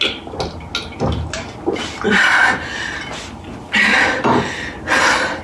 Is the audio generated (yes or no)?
no